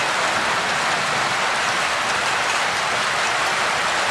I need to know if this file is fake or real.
real